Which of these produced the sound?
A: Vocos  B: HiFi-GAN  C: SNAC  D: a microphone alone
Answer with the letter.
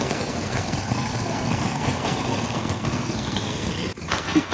C